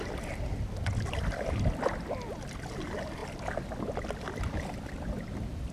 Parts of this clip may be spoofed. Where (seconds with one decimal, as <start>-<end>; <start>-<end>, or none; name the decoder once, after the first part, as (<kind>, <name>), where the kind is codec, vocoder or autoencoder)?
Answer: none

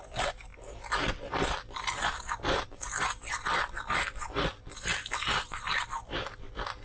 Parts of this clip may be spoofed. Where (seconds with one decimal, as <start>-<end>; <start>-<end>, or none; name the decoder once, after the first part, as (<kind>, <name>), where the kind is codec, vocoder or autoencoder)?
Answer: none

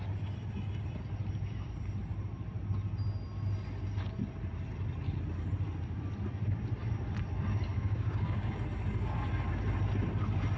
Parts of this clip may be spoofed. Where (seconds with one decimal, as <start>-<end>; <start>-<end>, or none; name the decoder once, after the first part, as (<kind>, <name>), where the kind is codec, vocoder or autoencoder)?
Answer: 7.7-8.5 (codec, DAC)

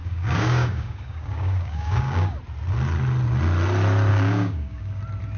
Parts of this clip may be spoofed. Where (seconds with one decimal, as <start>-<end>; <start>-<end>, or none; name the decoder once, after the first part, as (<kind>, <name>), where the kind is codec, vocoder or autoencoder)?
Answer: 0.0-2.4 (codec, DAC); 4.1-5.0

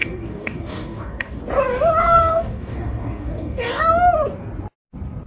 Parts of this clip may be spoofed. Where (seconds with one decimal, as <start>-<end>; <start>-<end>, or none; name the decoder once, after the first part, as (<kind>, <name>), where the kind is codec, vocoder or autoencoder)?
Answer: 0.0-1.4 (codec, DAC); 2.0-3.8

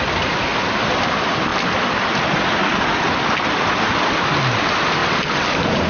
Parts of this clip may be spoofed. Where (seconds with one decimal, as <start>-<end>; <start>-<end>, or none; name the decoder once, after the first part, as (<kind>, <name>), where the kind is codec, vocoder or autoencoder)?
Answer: none